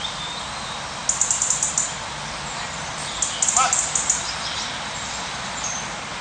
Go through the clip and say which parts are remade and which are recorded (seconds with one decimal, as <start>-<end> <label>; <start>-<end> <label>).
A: 0.0-6.2 recorded